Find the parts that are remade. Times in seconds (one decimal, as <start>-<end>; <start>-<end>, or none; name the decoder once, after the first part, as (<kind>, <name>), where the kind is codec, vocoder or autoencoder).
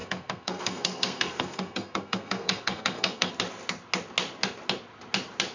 0.0-3.3 (codec, SNAC)